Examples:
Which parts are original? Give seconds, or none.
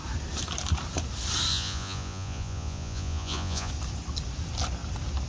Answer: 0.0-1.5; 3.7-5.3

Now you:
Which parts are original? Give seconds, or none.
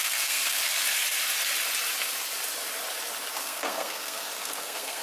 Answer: 0.6-3.4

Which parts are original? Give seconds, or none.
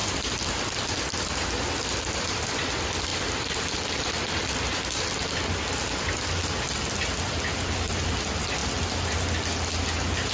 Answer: 1.0-10.3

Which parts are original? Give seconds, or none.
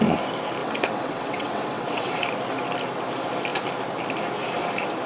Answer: 0.0-0.6; 2.2-5.1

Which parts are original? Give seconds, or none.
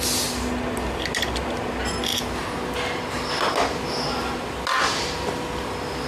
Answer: 0.0-6.1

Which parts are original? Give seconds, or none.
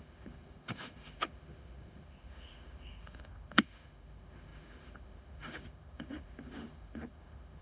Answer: none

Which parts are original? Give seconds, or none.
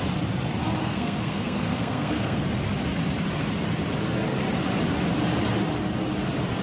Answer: 0.0-0.8; 2.4-6.6